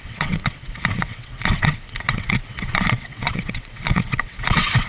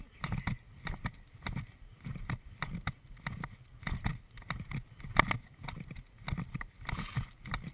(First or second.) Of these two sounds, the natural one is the second